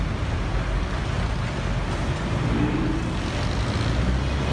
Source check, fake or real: real